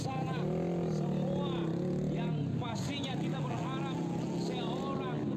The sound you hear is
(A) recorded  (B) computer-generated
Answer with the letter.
A